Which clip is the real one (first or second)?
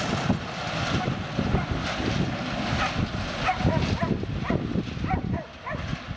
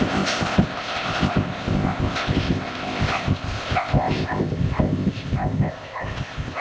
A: first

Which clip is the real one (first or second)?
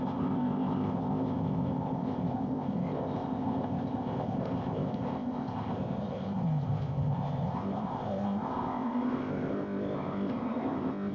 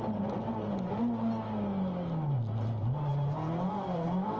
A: second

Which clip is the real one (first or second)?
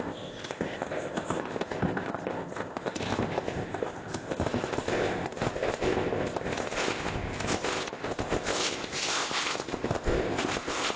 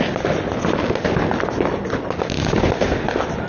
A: second